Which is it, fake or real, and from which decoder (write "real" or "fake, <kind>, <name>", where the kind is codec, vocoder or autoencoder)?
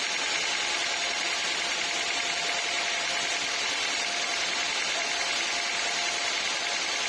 real